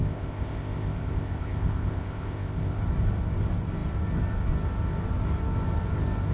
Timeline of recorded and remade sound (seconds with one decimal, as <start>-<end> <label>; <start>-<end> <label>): 0.0-2.8 remade; 2.8-6.3 recorded